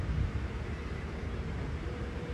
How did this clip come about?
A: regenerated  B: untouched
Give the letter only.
A